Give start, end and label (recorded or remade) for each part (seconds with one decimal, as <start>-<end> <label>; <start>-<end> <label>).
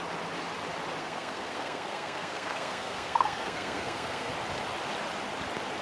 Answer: 0.0-1.0 recorded; 1.0-4.3 remade; 4.3-5.8 recorded